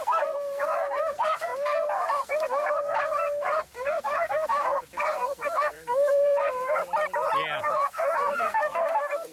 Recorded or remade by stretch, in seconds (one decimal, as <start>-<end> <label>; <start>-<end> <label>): 0.0-6.8 remade; 6.8-7.6 recorded; 7.6-9.3 remade